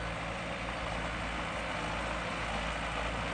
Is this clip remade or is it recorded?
recorded